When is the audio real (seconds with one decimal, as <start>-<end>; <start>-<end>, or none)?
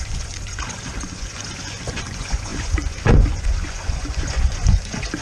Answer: none